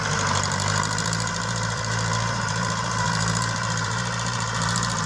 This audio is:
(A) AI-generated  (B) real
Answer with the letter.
A